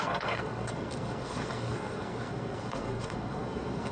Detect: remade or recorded remade